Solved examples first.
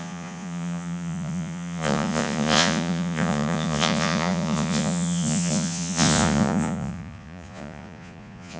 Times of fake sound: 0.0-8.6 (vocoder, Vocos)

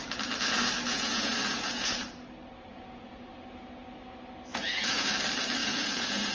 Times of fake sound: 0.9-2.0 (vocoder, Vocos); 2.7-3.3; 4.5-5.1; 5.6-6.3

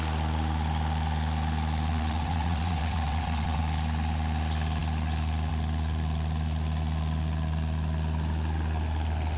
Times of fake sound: 1.9-3.6 (vocoder, WaveNeXt)

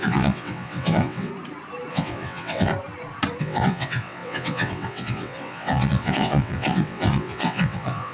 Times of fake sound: 0.0-1.3 (vocoder, WaveNeXt); 1.9-2.7; 3.4-8.1

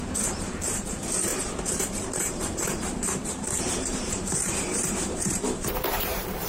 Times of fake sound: 0.0-6.5 (vocoder, BigVGAN v2)

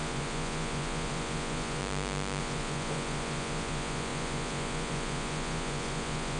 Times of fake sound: 0.0-1.8 (vocoder, Vocos); 2.4-6.4